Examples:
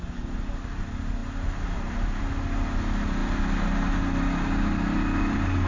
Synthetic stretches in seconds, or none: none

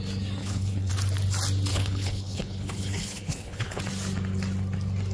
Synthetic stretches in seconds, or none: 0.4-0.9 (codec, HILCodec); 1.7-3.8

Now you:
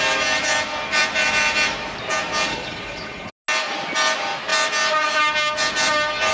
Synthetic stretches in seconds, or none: 2.5-3.3 (codec, HILCodec)

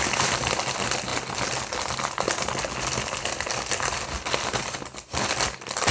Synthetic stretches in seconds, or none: none

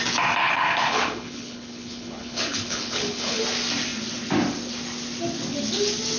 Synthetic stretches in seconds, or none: 0.4-3.4 (codec, HILCodec)

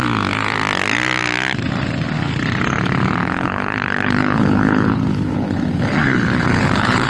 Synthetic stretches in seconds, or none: 3.2-7.1 (codec, HILCodec)